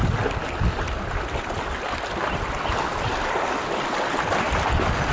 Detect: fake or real real